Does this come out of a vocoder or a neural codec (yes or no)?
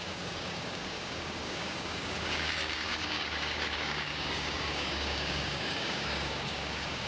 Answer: yes